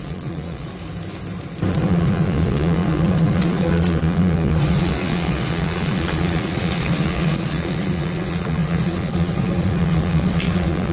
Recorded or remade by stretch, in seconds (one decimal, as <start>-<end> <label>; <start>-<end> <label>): 0.0-0.7 remade; 0.7-1.7 recorded; 1.7-10.9 remade